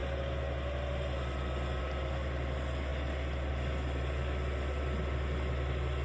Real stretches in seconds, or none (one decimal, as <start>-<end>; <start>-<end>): 0.0-6.0